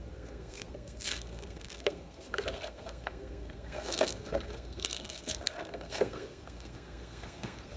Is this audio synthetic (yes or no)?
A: yes